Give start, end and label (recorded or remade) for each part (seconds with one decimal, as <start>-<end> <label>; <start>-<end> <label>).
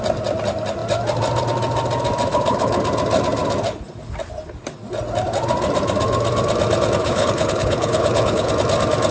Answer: 0.0-2.3 recorded; 2.3-2.8 remade; 2.8-7.0 recorded; 7.0-8.5 remade; 8.5-9.1 recorded